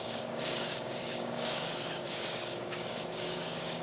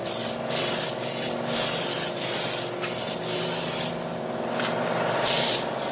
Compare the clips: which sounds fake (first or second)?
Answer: first